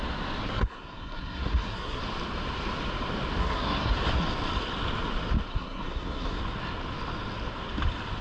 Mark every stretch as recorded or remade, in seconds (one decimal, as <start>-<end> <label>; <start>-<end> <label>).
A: 0.0-0.4 recorded; 0.4-2.0 remade; 2.0-3.4 recorded; 3.4-3.9 remade; 3.9-5.5 recorded; 5.5-6.4 remade; 6.4-8.2 recorded